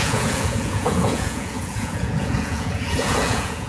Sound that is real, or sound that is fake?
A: fake